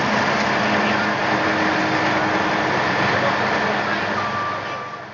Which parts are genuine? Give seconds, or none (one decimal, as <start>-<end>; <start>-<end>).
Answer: 0.0-5.1